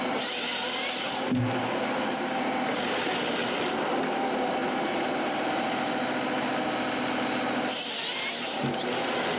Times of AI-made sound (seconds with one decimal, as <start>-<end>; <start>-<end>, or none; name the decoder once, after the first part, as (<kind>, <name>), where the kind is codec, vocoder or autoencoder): none